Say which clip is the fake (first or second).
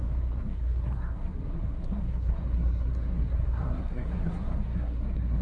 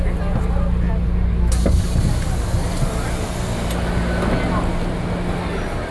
first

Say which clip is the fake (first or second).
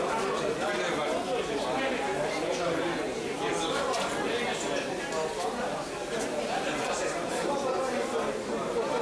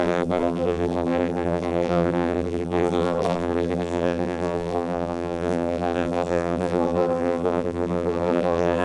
second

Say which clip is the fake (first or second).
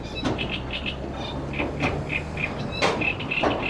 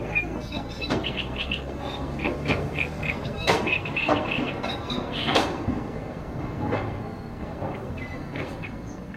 second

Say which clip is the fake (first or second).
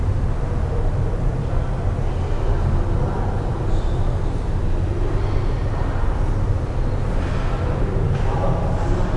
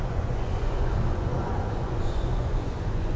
second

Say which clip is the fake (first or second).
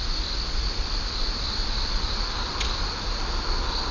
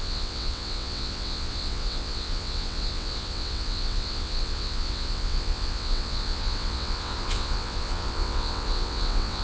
second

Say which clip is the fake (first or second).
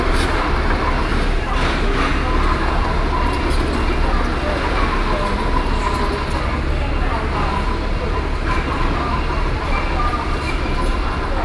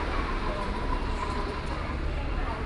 second